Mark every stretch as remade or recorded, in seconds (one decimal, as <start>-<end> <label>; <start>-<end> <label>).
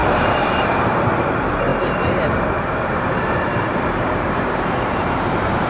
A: 0.0-5.7 remade